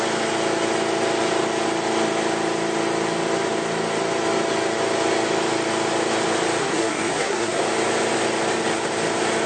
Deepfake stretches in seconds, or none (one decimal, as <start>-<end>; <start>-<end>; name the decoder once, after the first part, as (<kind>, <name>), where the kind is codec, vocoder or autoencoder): 6.6-7.6 (codec, SNAC)